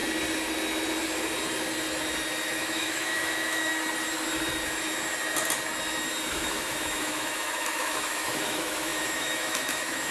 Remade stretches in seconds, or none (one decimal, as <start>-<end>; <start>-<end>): 2.5-3.7; 6.3-10.1